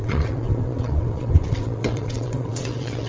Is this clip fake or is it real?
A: fake